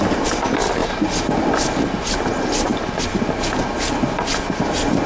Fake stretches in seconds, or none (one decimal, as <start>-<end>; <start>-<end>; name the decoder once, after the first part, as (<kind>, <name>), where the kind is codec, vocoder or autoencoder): none